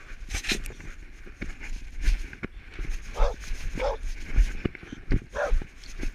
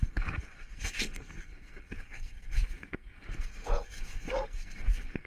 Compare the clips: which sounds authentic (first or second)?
first